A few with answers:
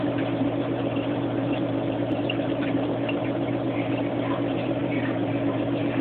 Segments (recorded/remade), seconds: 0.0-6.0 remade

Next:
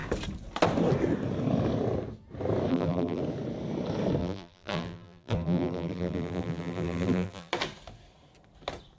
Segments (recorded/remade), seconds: 0.0-2.7 recorded; 2.7-3.2 remade; 3.2-4.2 recorded; 4.2-7.5 remade; 7.5-9.0 recorded

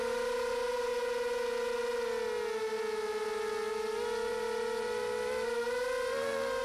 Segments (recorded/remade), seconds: 0.0-0.9 remade; 0.9-4.3 recorded; 4.3-6.6 remade

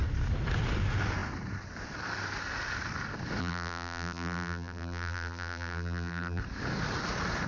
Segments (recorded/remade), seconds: 0.0-3.4 recorded; 3.4-6.4 remade; 6.4-7.5 recorded

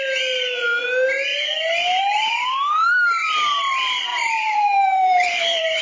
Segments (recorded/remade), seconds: 0.0-4.1 recorded; 4.1-5.8 remade

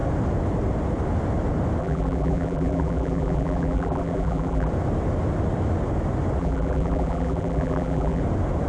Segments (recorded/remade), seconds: 0.0-1.8 recorded; 1.8-4.7 remade; 4.7-6.4 recorded; 6.4-8.2 remade; 8.2-8.7 recorded

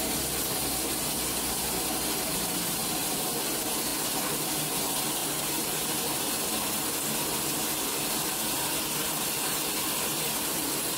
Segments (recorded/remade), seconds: 0.0-5.2 recorded; 5.2-5.8 remade; 5.8-11.0 recorded